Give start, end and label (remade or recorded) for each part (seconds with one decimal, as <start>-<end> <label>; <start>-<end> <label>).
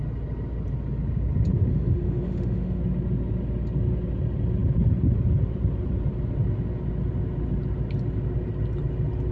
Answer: 0.0-1.7 recorded; 1.7-2.8 remade; 2.8-9.3 recorded